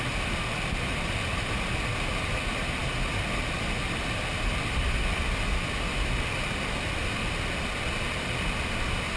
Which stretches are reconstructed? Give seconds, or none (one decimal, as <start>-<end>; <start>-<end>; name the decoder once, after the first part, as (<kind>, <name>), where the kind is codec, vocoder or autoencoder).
none